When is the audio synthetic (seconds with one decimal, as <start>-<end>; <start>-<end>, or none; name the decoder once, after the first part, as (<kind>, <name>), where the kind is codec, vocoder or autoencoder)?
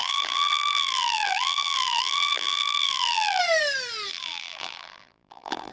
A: 0.0-3.4 (vocoder, BigVGAN v2); 4.1-5.7